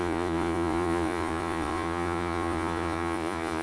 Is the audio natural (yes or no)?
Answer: no